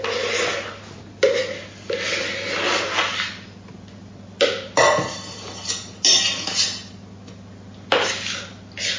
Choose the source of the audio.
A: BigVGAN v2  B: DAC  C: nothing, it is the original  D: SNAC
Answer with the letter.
C